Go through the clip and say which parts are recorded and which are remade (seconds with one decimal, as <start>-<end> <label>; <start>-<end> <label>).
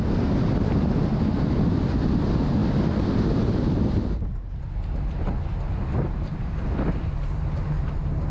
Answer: 0.0-8.3 recorded